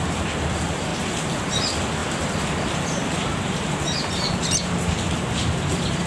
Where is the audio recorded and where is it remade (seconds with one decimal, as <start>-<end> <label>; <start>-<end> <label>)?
0.0-0.9 remade; 0.9-1.4 recorded; 1.4-6.1 remade